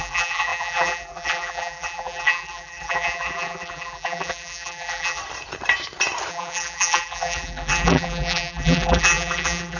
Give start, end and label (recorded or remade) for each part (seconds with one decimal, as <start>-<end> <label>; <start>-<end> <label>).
0.0-5.2 remade; 5.2-6.3 recorded; 6.3-9.8 remade

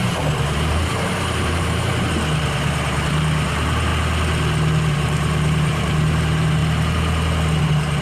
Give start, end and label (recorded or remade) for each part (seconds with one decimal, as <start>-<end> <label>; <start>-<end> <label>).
0.0-1.9 remade; 1.9-2.4 recorded; 2.4-3.9 remade; 3.9-4.9 recorded; 4.9-6.6 remade; 6.6-7.6 recorded; 7.6-8.0 remade

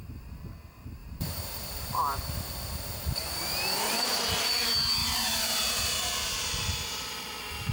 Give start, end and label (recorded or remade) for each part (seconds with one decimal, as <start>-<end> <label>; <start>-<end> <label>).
0.0-1.0 recorded; 1.0-4.3 remade; 4.3-5.0 recorded; 5.0-6.0 remade; 6.0-7.7 recorded

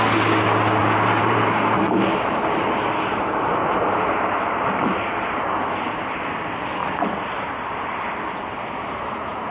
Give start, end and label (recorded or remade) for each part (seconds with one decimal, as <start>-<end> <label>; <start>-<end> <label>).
0.0-0.8 recorded; 0.8-4.2 remade; 4.2-9.5 recorded

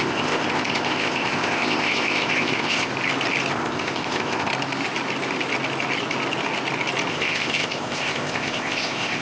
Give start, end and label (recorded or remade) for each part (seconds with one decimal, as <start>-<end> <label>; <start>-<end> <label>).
0.0-2.9 remade; 2.9-3.5 recorded; 3.5-4.5 remade; 4.5-7.1 recorded; 7.1-9.2 remade

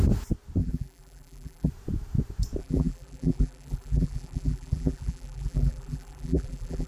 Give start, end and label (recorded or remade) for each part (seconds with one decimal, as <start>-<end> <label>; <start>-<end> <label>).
0.0-0.6 recorded; 0.6-1.7 remade; 1.7-2.6 recorded; 2.6-6.9 remade

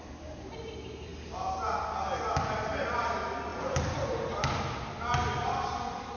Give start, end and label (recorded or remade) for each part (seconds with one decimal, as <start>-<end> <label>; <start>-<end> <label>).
0.0-6.2 recorded

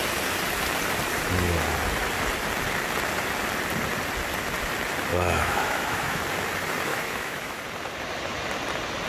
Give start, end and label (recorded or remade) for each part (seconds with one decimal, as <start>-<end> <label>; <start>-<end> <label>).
0.0-5.1 recorded; 5.1-6.2 remade; 6.2-6.9 recorded; 6.9-7.6 remade; 7.6-9.1 recorded